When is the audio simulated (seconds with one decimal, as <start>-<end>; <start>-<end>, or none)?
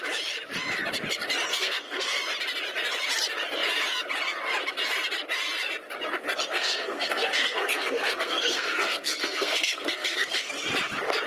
1.5-2.2; 6.5-10.5